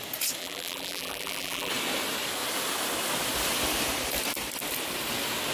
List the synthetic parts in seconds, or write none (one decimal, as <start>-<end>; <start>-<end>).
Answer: 0.4-1.7